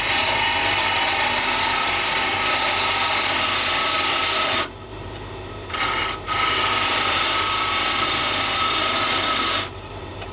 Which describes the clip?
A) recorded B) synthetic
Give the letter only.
B